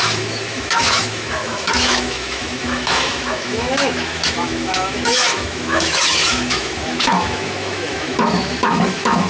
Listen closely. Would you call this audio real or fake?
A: fake